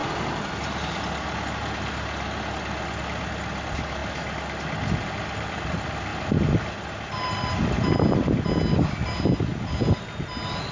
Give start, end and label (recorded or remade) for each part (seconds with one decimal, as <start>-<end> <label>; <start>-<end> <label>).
0.0-3.0 recorded; 3.0-4.0 remade; 4.0-5.6 recorded; 5.6-6.1 remade; 6.1-10.7 recorded